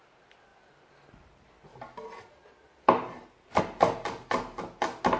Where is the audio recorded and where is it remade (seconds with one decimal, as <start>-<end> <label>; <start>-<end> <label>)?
0.0-5.2 recorded